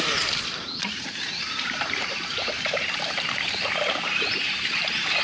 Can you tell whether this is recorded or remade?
remade